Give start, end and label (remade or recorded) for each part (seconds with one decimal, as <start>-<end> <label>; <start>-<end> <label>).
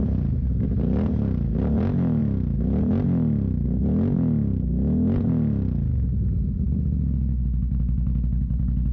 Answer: 0.0-8.9 recorded